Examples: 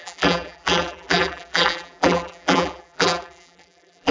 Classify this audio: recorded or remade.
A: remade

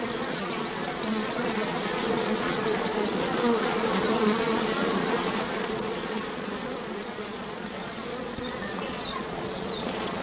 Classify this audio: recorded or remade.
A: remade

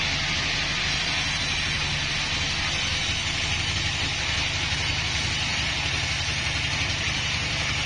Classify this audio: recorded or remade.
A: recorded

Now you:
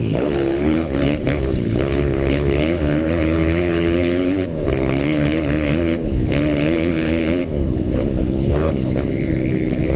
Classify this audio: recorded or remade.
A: remade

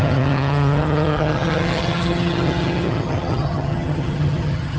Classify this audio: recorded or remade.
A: remade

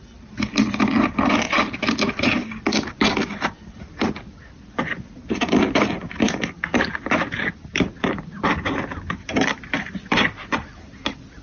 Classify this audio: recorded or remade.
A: recorded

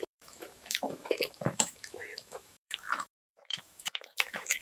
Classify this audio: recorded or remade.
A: remade